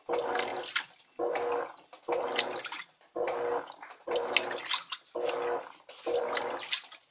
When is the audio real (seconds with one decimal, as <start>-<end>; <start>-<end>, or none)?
0.0-7.1